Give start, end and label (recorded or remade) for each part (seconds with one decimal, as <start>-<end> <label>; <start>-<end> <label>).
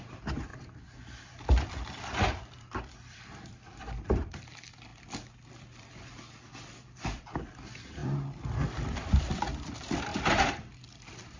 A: 0.0-0.5 remade; 0.5-1.3 recorded; 1.3-4.9 remade; 4.9-5.6 recorded; 5.6-8.0 remade; 8.0-9.2 recorded; 9.2-11.4 remade